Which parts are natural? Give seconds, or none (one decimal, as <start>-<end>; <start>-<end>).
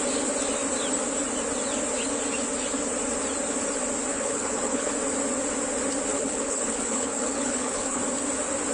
0.0-4.1; 4.9-6.1; 8.0-8.7